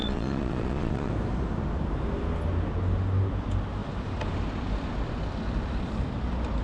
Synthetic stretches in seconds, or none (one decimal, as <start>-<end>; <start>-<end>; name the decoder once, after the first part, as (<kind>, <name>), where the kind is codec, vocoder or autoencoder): 0.0-1.1 (vocoder, Vocos)